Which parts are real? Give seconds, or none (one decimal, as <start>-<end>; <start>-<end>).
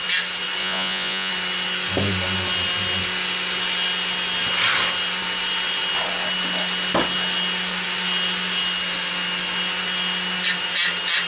0.0-0.6; 1.3-11.3